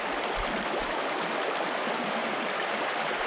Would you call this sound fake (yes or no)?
no